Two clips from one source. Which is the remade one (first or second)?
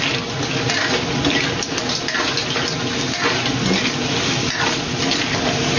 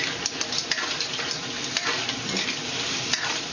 second